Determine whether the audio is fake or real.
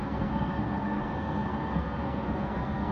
fake